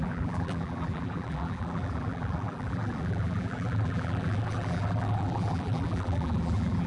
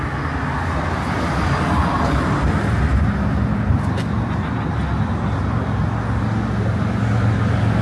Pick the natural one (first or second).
second